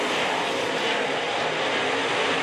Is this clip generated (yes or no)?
no